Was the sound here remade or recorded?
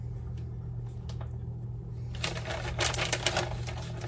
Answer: recorded